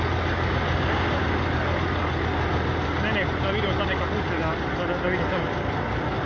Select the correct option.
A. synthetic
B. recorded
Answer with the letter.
B